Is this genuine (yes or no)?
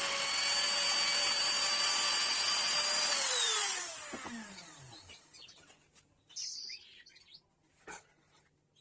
yes